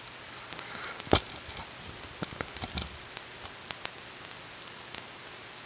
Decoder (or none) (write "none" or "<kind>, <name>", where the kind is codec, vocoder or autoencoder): none